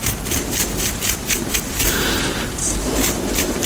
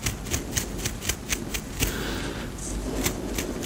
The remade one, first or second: first